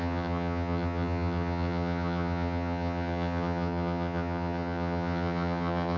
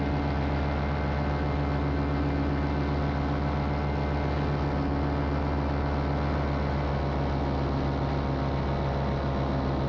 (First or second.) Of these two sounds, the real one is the second